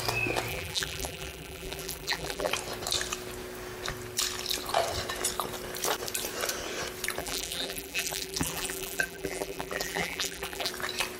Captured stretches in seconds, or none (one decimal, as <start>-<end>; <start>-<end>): 0.0-0.5; 2.5-7.2; 10.7-11.2